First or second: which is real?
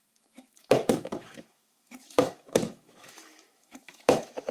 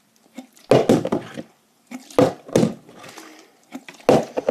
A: second